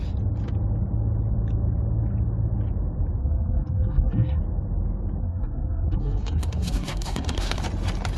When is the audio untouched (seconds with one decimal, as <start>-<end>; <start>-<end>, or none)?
0.0-3.2; 4.4-5.2; 7.6-8.2